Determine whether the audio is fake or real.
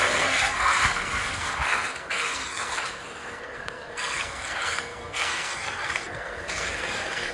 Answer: fake